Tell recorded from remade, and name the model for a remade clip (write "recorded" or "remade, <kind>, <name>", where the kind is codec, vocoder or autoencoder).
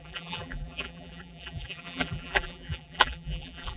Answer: remade, vocoder, BigVGAN v2